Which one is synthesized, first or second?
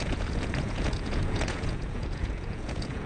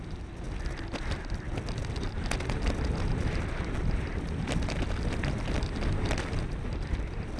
first